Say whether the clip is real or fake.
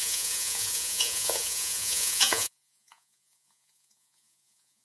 fake